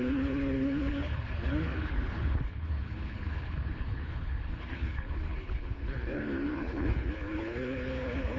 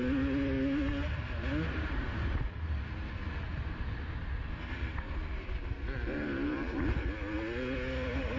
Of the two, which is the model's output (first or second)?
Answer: first